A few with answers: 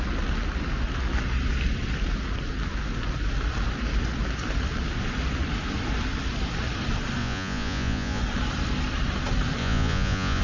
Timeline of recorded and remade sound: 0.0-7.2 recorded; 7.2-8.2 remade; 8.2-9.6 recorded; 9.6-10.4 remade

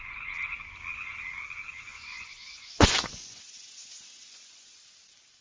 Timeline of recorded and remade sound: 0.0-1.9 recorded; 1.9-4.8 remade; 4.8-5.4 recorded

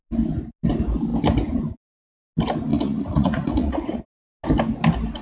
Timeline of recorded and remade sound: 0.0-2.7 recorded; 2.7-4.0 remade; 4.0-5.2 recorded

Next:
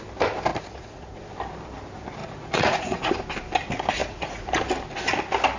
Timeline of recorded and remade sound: 0.0-0.5 recorded; 0.5-1.2 remade; 1.2-2.2 recorded; 2.2-3.1 remade; 3.1-4.0 recorded; 4.0-4.5 remade; 4.5-5.6 recorded

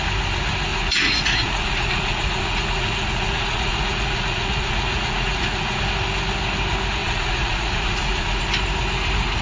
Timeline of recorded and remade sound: 0.0-0.7 recorded; 0.7-5.8 remade; 5.8-7.0 recorded; 7.0-8.4 remade; 8.4-9.4 recorded